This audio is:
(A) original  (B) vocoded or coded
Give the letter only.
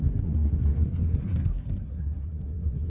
B